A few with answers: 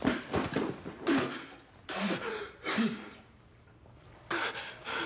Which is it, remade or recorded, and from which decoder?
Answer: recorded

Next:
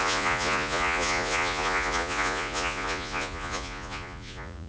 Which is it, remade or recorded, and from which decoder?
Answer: remade, vocoder, Vocos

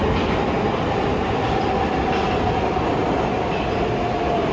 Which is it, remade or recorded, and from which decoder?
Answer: recorded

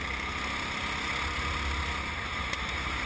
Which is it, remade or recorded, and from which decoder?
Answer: recorded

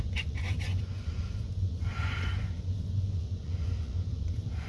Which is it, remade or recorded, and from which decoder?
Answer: remade, vocoder, Vocos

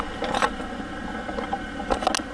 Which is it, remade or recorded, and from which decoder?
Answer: recorded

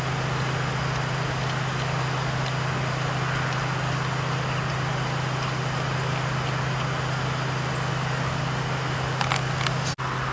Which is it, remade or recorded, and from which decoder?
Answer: recorded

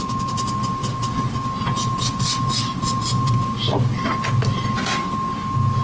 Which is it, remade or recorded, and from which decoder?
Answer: recorded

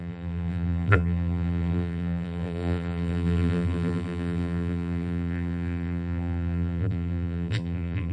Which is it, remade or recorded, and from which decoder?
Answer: remade, vocoder, BigVGAN v2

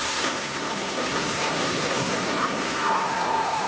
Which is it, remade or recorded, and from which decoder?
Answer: remade, codec, SNAC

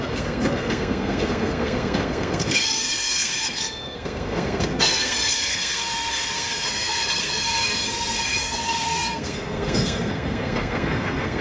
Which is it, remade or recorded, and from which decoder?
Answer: remade, codec, SNAC